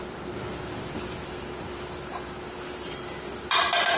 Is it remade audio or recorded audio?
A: recorded